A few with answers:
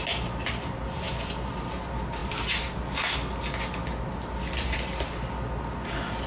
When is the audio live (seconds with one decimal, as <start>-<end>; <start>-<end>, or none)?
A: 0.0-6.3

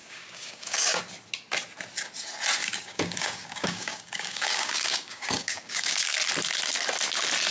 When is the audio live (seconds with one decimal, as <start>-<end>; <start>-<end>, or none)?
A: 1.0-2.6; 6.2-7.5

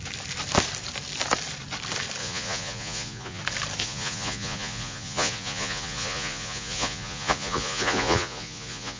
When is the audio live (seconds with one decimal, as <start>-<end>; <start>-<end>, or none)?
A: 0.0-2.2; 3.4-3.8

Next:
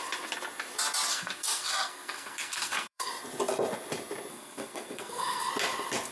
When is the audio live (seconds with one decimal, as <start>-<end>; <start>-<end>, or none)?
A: 0.0-1.1; 3.1-4.3; 5.5-6.1